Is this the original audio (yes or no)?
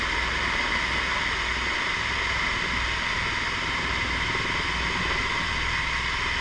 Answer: yes